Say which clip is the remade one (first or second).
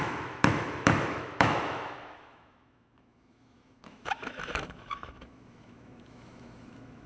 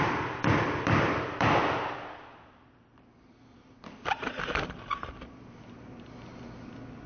first